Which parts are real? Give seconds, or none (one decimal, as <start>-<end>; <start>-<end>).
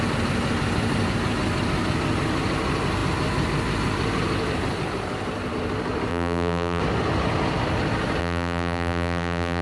0.0-6.1; 6.8-8.2